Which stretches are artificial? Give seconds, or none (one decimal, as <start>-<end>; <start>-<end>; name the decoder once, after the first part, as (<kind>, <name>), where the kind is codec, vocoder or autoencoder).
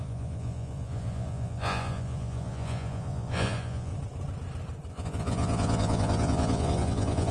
0.0-3.9 (vocoder, Vocos); 4.9-7.3